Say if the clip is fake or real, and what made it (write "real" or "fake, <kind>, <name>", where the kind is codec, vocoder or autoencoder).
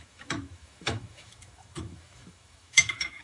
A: fake, autoencoder, DAC-VAE